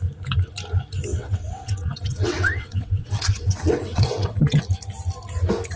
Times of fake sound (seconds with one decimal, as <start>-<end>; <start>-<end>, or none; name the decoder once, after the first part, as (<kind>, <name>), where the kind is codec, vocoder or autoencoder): 1.1-4.6 (vocoder, WaveNeXt)